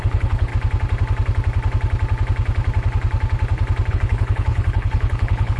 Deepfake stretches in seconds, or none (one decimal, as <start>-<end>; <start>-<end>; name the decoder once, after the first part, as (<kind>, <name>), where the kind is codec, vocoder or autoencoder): 0.0-0.5 (codec, HILCodec); 3.9-5.6